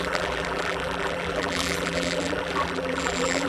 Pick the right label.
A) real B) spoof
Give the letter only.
B